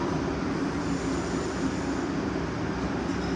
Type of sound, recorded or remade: recorded